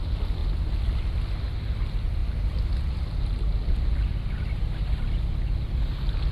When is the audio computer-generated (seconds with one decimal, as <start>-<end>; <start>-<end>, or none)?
none